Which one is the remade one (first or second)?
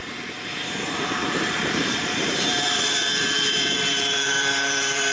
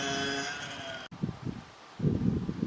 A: first